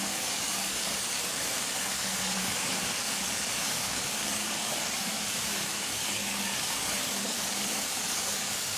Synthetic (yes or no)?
yes